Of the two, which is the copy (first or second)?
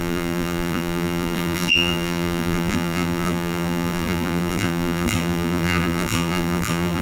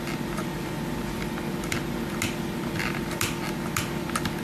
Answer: first